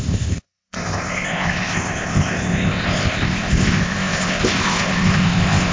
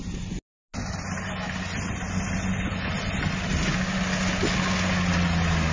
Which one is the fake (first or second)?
first